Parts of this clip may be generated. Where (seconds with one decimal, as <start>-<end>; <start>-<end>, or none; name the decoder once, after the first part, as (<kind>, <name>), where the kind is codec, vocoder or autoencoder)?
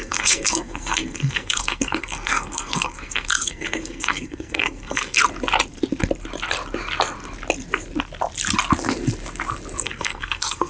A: 0.0-5.2 (codec, SNAC); 9.8-10.7